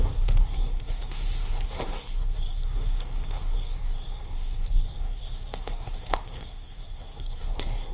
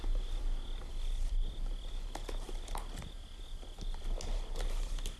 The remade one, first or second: first